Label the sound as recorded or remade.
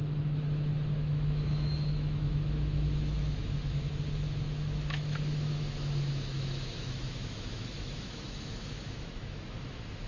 remade